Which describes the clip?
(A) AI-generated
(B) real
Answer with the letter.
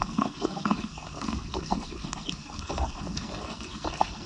A